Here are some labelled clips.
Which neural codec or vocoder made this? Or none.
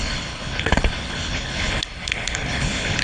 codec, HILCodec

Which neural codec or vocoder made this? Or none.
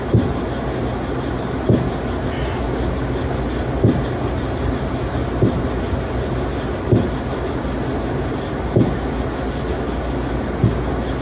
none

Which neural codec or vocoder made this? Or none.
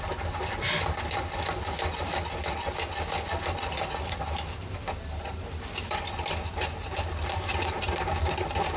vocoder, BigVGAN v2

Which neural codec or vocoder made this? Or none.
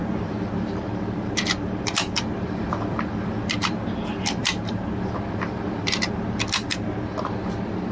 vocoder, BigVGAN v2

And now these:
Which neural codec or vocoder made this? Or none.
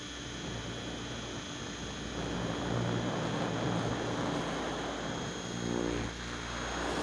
none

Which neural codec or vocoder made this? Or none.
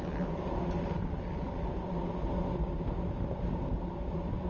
none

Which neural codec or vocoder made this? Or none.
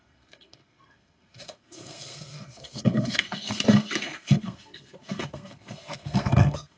codec, SNAC